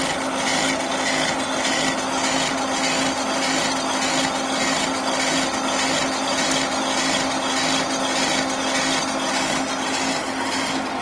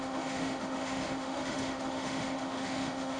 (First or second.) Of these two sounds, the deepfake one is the second